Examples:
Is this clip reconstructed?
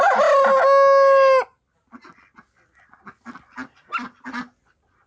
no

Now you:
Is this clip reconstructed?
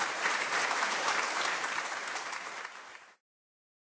yes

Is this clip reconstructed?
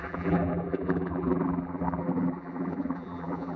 yes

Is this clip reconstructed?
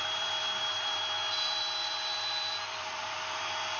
yes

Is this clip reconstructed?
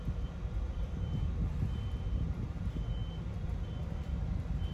yes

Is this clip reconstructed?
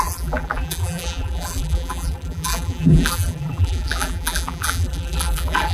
yes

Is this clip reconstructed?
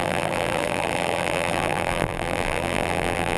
yes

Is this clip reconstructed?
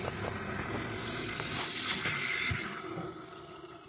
no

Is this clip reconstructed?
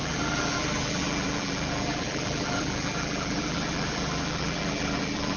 yes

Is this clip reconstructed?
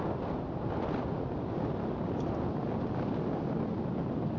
no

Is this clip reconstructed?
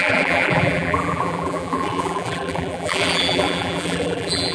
yes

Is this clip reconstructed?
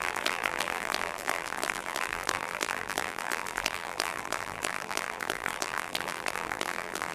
yes